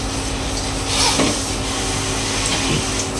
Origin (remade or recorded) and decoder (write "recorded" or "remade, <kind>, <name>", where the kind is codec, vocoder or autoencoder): recorded